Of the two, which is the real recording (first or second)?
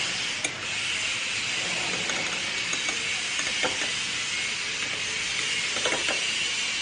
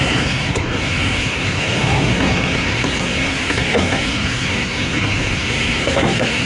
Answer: first